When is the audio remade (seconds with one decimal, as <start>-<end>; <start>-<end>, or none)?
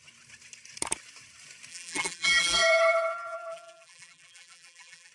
1.7-5.1